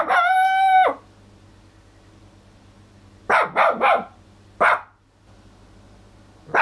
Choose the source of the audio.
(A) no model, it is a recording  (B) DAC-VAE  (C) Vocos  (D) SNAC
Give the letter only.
A